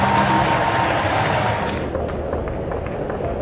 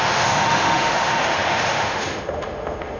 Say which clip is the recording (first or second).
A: first